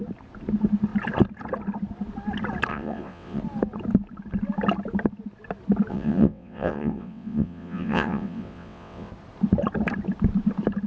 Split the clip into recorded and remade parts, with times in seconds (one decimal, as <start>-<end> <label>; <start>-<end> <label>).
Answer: 0.0-2.7 recorded; 2.7-3.4 remade; 3.4-5.9 recorded; 5.9-9.1 remade; 9.1-10.9 recorded